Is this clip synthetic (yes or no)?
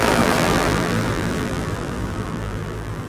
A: yes